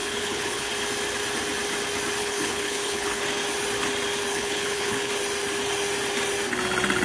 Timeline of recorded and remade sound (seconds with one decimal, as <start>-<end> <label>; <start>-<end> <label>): 0.0-0.7 remade; 0.7-2.2 recorded; 2.2-3.2 remade; 3.2-4.3 recorded; 4.3-5.1 remade; 5.1-7.0 recorded